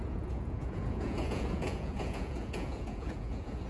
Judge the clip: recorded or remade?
remade